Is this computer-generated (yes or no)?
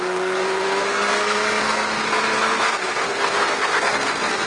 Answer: yes